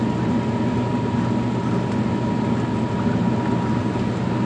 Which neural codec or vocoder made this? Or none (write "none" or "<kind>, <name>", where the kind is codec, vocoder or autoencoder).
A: none